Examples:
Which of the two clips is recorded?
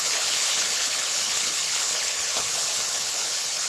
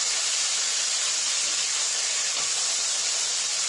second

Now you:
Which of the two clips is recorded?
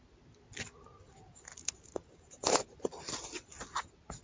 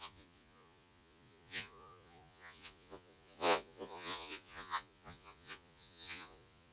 first